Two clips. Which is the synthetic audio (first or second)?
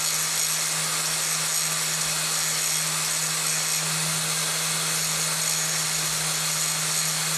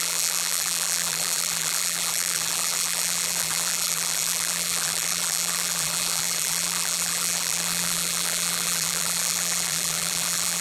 second